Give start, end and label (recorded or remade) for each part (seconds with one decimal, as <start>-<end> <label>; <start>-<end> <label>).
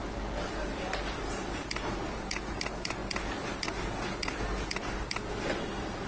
0.0-6.1 recorded